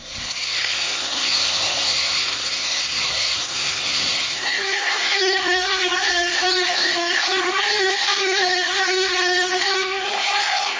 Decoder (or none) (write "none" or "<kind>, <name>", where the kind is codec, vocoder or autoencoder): codec, SNAC